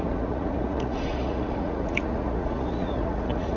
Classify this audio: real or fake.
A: fake